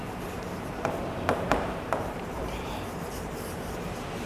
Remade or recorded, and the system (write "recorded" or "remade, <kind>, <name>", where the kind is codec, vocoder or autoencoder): remade, vocoder, BigVGAN v2